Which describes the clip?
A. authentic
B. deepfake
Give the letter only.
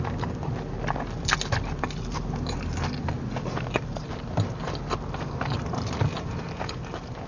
A